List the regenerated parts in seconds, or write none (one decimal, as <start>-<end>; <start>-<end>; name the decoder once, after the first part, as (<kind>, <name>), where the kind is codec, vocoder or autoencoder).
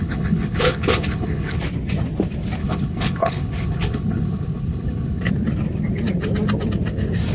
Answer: 0.0-1.6 (codec, HILCodec); 2.6-5.3